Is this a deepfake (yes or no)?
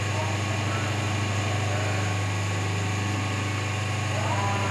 no